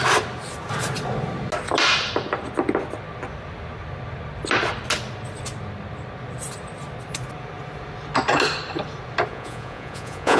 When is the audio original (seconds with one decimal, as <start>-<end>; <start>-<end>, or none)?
0.0-9.3